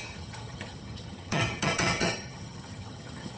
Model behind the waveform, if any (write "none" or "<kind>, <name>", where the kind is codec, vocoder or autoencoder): vocoder, HiFi-GAN